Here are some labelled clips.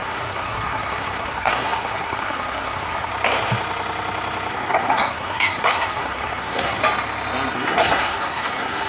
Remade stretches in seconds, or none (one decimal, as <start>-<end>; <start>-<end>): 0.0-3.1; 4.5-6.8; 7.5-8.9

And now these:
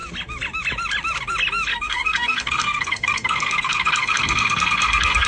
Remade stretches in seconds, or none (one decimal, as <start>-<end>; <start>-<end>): 1.7-5.3

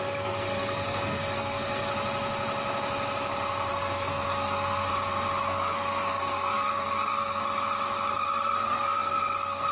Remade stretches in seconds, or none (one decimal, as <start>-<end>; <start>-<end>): 0.0-1.9; 3.7-4.9; 5.4-7.4; 8.1-9.7

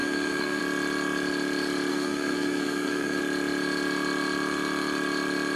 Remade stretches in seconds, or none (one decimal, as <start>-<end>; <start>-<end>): 0.0-0.6; 1.9-3.2

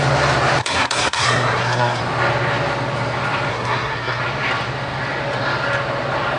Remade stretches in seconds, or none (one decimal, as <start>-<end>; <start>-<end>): 0.6-2.0; 3.5-4.2